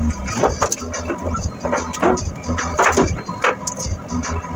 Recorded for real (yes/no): yes